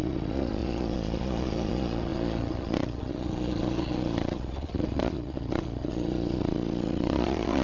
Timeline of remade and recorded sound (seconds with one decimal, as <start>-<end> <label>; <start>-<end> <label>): 0.0-7.6 remade